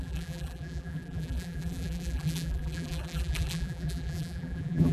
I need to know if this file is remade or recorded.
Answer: remade